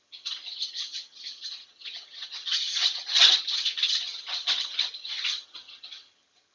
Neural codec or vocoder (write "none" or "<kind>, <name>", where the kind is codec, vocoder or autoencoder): vocoder, HiFi-GAN